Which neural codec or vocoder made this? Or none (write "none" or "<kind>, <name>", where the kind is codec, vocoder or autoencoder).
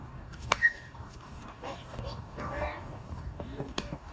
codec, DAC